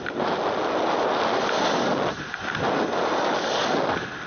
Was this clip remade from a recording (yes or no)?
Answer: no